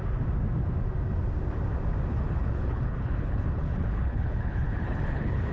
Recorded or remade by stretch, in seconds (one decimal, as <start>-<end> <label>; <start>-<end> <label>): 0.0-2.1 recorded; 2.1-5.5 remade